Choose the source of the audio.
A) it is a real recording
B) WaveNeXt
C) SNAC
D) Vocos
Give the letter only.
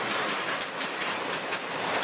A